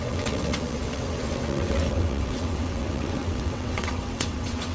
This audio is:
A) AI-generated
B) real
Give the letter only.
A